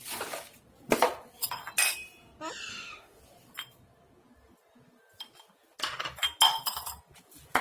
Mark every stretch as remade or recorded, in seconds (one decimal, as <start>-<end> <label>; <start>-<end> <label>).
0.0-2.7 recorded; 2.7-3.2 remade; 3.2-7.6 recorded